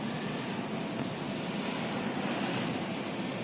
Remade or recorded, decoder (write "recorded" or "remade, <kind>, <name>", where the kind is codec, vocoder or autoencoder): recorded